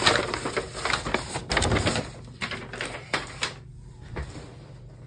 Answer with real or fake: real